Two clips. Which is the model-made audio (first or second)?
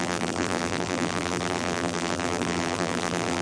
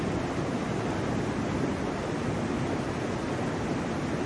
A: first